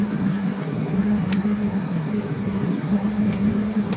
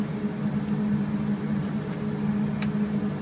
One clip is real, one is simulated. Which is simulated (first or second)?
first